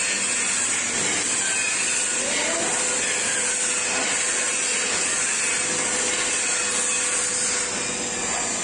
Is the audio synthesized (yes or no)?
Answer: no